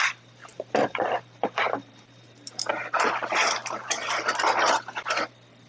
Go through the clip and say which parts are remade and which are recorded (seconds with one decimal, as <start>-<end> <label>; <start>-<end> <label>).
0.0-0.5 recorded; 0.5-2.7 remade; 2.7-3.6 recorded; 3.6-4.2 remade; 4.2-5.7 recorded